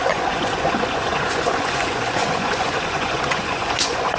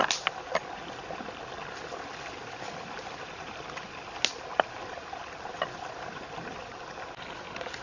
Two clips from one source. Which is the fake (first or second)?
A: first